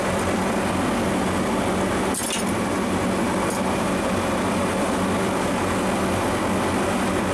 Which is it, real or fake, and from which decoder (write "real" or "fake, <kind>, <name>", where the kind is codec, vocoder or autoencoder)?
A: real